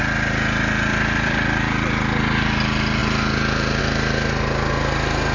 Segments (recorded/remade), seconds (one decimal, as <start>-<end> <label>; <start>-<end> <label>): 0.0-0.9 recorded; 0.9-2.0 remade; 2.0-5.3 recorded